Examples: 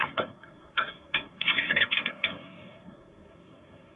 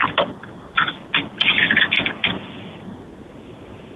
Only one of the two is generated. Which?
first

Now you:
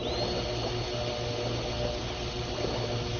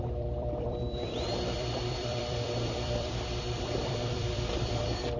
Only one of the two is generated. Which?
second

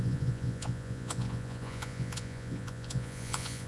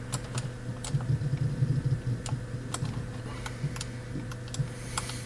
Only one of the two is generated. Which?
first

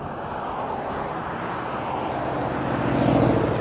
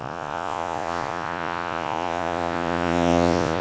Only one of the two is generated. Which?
second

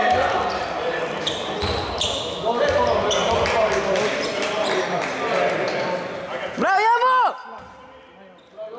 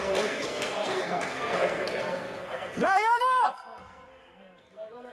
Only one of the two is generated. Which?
second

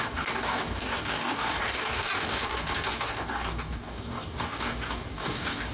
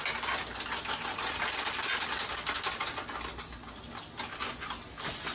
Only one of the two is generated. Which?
first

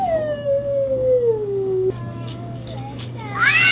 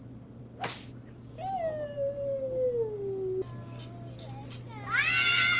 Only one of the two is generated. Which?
first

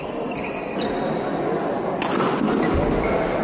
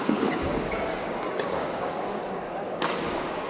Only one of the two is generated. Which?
second